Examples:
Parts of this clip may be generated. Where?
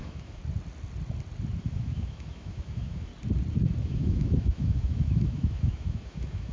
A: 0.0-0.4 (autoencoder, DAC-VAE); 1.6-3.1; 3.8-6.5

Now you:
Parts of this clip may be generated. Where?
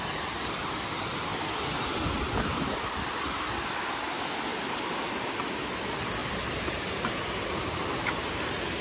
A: none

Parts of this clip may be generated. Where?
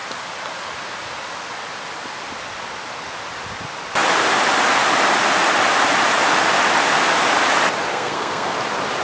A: 7.9-8.6 (codec, SNAC)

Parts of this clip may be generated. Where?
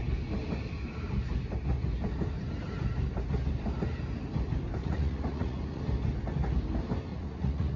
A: 4.8-5.8 (vocoder, Vocos); 7.1-7.8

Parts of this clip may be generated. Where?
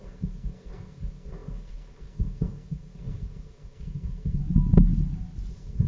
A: 0.0-4.4 (codec, SNAC); 5.5-5.9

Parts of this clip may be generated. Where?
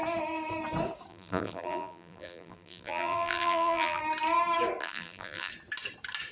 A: 1.1-4.0 (vocoder, BigVGAN v2); 4.8-5.5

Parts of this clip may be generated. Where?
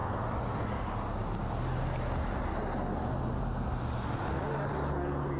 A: none